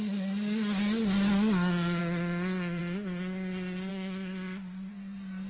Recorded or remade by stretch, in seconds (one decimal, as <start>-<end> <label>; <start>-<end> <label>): 0.0-3.9 recorded; 3.9-4.9 remade; 4.9-5.5 recorded